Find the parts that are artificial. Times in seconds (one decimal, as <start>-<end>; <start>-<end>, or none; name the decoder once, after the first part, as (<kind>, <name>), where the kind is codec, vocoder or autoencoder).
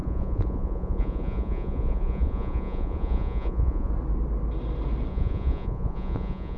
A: 0.0-3.9 (vocoder, Vocos); 5.1-6.6